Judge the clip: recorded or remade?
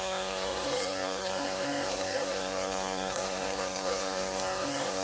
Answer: remade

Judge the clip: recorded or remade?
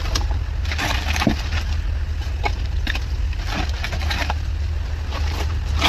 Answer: recorded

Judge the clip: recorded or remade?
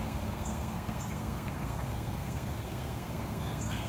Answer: remade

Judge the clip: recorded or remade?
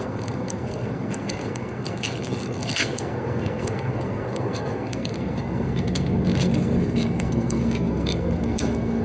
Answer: remade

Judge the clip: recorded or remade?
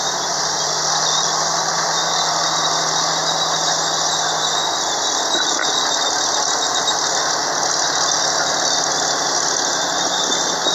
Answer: recorded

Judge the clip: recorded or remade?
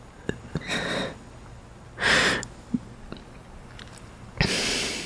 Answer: recorded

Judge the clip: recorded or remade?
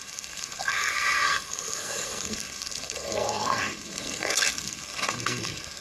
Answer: remade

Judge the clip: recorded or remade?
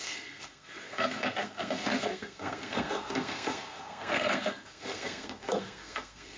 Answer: remade